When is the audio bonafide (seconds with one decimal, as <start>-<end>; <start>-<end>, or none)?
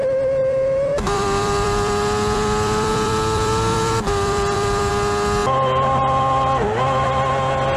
0.0-0.4; 4.9-7.8